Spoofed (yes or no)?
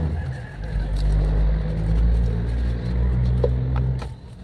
no